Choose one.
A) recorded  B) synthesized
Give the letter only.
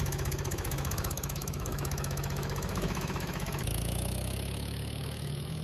B